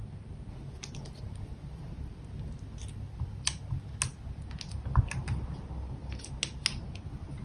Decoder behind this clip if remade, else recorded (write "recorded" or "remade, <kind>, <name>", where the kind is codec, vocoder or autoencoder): recorded